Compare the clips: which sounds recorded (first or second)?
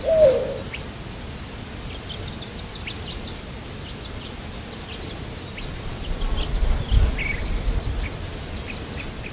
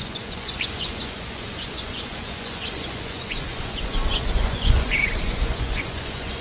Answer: first